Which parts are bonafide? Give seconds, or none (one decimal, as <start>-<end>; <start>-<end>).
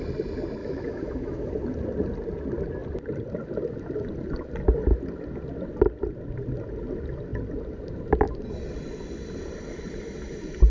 0.0-0.6; 1.5-10.7